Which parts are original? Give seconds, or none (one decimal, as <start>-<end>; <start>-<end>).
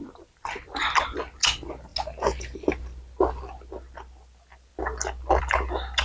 0.0-6.0